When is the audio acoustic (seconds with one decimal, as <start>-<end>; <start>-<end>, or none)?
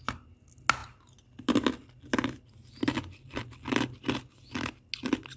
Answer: 0.0-5.4